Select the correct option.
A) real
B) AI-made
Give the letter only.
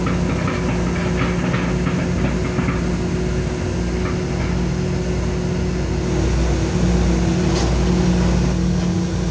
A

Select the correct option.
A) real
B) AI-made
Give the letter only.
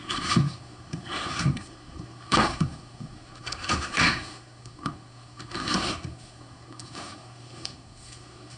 B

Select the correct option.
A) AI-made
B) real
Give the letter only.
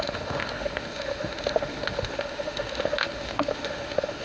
A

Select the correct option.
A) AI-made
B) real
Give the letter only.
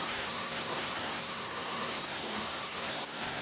A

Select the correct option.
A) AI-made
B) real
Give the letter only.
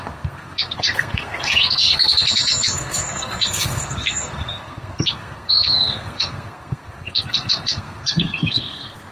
A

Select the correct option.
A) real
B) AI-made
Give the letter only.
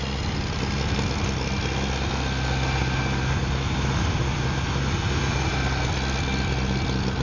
A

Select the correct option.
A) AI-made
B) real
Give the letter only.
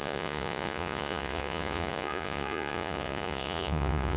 A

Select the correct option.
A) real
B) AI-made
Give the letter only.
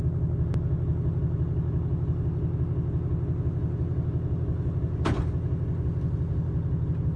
A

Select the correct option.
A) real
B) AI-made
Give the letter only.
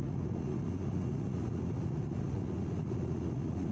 B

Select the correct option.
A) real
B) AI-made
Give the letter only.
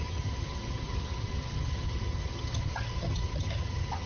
B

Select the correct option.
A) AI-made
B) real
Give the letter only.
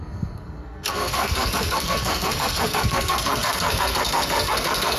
A